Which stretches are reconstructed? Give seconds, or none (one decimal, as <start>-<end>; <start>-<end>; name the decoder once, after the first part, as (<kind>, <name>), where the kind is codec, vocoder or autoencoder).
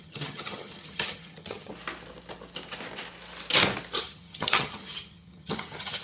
0.0-1.7 (vocoder, HiFi-GAN); 4.0-6.0